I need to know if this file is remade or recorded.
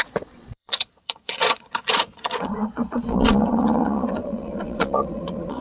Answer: remade